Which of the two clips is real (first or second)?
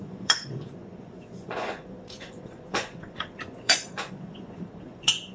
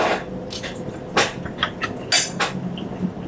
second